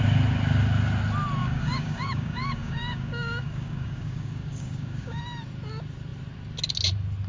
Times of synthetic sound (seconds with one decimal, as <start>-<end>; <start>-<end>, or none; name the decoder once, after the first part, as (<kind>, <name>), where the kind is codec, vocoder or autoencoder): 1.4-5.2 (codec, DAC)